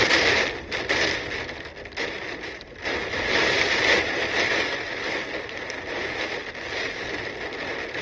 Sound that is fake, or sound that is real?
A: real